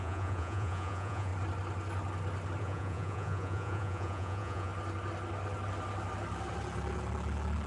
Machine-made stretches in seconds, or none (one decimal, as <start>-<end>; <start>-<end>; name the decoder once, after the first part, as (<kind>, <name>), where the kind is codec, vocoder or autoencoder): 0.0-1.3 (vocoder, Vocos); 2.6-4.7